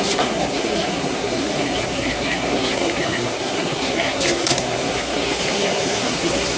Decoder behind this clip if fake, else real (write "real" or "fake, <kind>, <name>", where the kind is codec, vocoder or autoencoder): fake, codec, SNAC